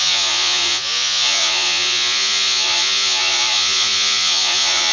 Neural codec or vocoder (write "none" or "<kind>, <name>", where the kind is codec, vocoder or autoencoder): vocoder, Vocos